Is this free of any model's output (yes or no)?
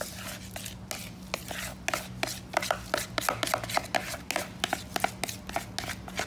yes